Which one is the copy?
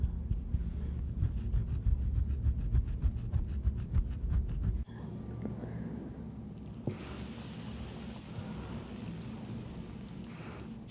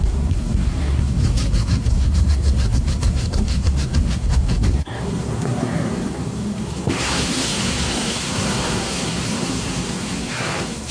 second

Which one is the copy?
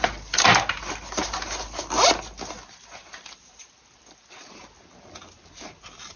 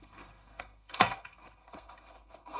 second